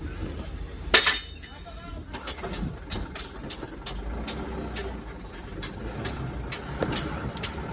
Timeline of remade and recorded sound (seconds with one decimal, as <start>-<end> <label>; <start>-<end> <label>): 0.0-7.7 recorded